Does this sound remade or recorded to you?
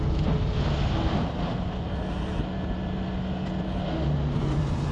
recorded